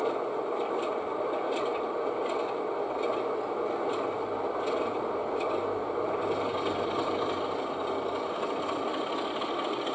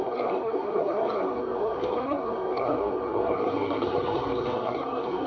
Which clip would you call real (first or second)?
first